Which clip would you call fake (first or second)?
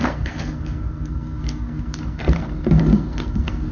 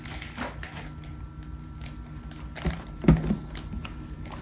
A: first